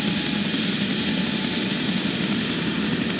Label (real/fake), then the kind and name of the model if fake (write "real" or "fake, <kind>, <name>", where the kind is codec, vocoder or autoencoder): real